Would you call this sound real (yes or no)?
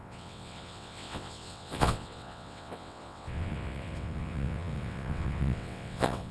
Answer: no